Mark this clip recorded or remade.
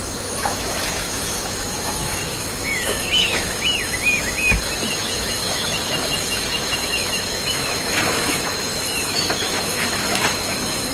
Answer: remade